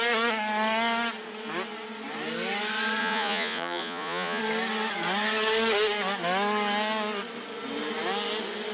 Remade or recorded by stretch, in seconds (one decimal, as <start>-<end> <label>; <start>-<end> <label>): 0.0-3.0 recorded; 3.0-4.4 remade; 4.4-8.7 recorded